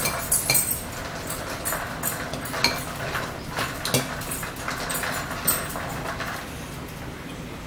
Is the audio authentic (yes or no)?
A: yes